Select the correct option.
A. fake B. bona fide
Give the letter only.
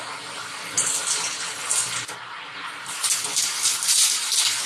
B